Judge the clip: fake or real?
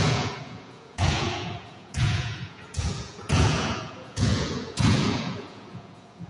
fake